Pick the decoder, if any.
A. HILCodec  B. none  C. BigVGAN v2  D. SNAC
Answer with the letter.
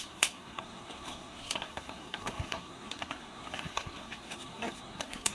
D